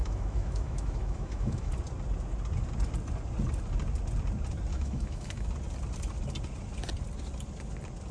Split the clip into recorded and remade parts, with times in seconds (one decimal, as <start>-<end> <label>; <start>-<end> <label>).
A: 0.0-1.7 remade; 1.7-4.7 recorded; 4.7-5.5 remade; 5.5-8.1 recorded

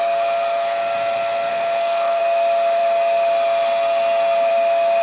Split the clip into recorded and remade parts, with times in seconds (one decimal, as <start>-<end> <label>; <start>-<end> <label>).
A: 0.0-1.5 recorded; 1.5-2.2 remade; 2.2-5.0 recorded

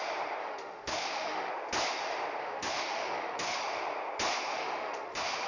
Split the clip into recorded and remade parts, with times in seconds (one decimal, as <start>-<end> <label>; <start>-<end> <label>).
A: 0.0-0.4 recorded; 0.4-1.5 remade; 1.5-2.4 recorded; 2.4-3.6 remade; 3.6-4.5 recorded; 4.5-5.5 remade

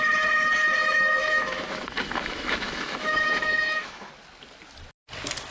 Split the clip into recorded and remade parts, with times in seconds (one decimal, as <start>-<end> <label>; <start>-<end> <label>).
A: 0.0-0.8 recorded; 0.8-4.1 remade; 4.1-5.5 recorded

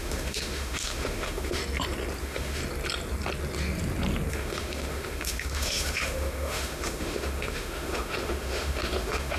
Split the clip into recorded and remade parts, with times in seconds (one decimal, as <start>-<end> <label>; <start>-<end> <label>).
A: 0.0-1.6 remade; 1.6-2.2 recorded; 2.2-2.6 remade; 2.6-4.3 recorded; 4.3-9.4 remade

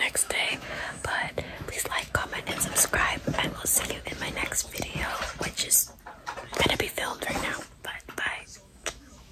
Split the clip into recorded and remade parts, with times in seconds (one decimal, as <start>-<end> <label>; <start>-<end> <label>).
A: 0.0-2.3 remade; 2.3-6.5 recorded; 6.5-7.1 remade; 7.1-8.2 recorded; 8.2-9.3 remade